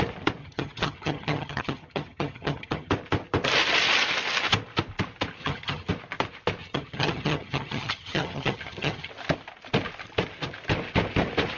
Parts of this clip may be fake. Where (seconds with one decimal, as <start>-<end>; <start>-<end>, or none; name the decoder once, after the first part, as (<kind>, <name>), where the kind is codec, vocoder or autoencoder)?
0.4-2.9 (vocoder, HiFi-GAN); 5.4-5.9; 6.6-9.1